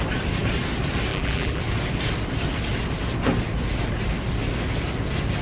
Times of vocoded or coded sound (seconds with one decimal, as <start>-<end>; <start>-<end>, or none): 1.1-1.6